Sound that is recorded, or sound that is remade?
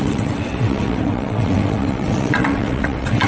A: remade